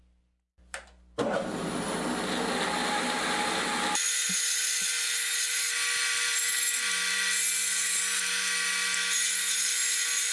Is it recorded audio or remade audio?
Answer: recorded